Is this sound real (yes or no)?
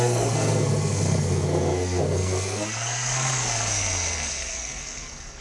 no